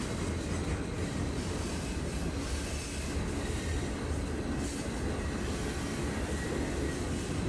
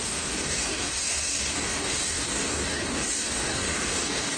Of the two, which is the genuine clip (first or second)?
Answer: first